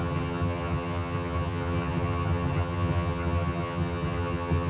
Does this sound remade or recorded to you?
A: remade